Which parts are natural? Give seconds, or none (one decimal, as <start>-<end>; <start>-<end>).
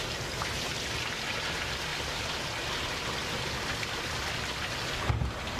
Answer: 0.7-5.6